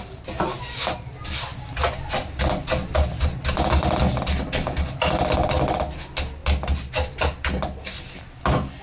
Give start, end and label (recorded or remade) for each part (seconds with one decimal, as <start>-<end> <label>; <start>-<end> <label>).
0.0-8.8 recorded